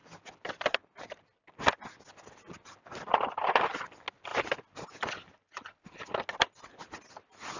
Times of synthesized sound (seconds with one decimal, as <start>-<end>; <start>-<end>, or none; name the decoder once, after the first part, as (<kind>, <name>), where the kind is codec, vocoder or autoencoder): none